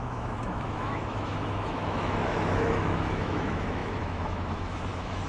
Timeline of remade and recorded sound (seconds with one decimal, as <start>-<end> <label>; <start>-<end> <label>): 0.0-5.3 remade